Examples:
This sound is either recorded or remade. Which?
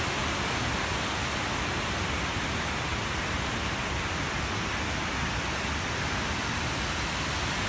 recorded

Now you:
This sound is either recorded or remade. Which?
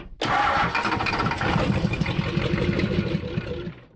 recorded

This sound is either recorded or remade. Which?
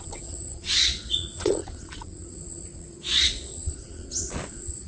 remade